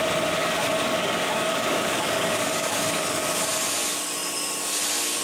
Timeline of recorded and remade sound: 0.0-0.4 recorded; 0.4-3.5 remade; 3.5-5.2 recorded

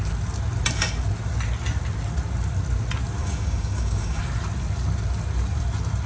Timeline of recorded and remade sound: 0.0-3.2 recorded; 3.2-4.2 remade; 4.2-6.1 recorded

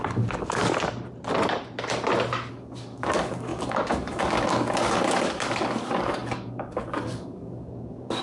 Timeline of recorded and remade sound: 0.0-0.7 remade; 0.7-2.5 recorded; 2.5-8.2 remade